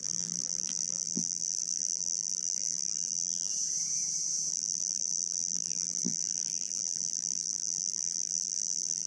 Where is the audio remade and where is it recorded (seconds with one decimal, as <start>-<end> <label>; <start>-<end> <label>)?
0.0-3.5 remade; 3.5-4.5 recorded; 4.5-9.1 remade